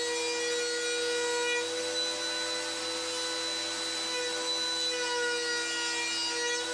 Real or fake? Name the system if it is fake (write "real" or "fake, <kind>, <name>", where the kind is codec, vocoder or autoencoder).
real